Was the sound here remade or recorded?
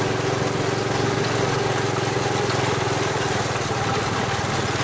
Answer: recorded